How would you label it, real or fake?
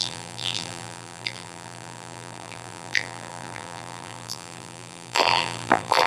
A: fake